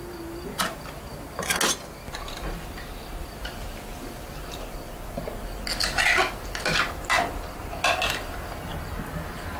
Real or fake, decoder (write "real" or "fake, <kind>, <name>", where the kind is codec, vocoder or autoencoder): real